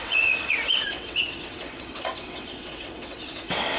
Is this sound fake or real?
fake